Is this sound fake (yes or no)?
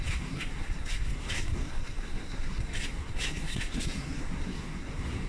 yes